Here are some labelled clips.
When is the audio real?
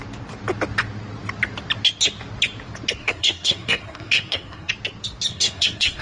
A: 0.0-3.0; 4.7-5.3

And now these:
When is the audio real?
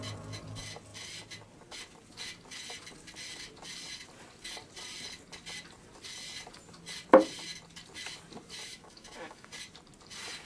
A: 0.0-8.7; 9.5-10.5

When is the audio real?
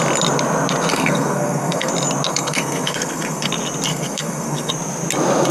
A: 0.0-0.9; 1.9-2.3; 3.5-3.9; 4.7-5.5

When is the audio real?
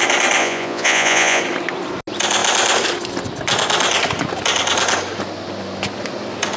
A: 0.0-0.4; 1.4-6.6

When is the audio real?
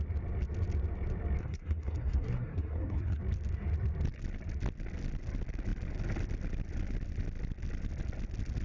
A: 0.0-1.4; 3.2-8.6